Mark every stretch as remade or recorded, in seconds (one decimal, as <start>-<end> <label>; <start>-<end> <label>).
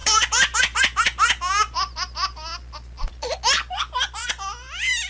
0.0-5.1 recorded